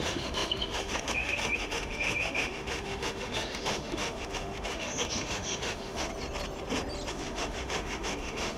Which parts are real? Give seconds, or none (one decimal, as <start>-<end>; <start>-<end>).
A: 6.1-7.1